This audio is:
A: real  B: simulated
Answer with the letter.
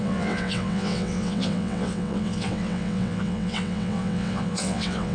B